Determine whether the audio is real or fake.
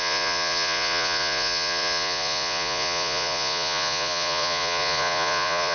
fake